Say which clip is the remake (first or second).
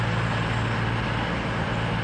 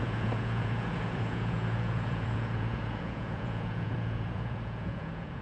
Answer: second